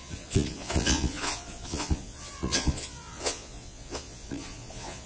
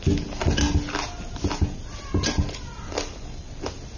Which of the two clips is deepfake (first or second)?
first